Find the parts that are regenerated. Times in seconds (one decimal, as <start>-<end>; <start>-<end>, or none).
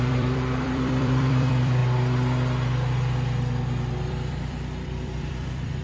0.0-1.8; 4.0-5.8